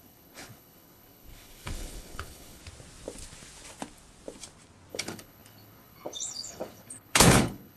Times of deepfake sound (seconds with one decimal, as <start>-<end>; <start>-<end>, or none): 0.0-2.6; 4.9-7.8